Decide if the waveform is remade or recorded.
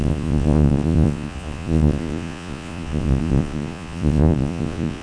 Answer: remade